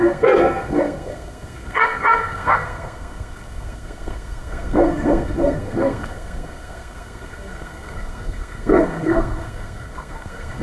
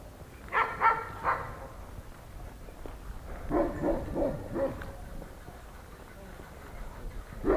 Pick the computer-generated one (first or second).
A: first